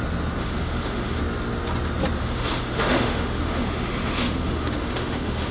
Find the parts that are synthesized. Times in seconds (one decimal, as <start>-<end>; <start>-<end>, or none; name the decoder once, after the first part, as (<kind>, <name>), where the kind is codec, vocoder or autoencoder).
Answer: 0.4-1.2 (autoencoder, DAC-VAE); 2.2-5.5